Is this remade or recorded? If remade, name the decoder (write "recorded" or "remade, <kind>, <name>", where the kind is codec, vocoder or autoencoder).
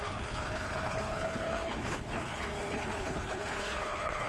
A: remade, codec, HILCodec